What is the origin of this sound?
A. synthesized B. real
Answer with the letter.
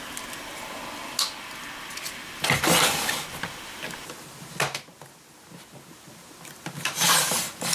B